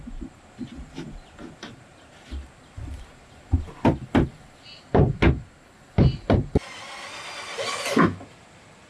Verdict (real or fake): real